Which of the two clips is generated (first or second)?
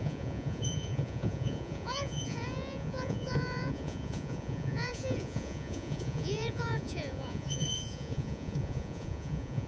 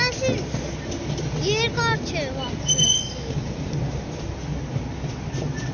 first